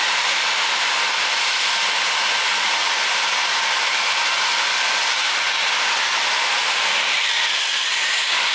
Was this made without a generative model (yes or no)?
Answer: yes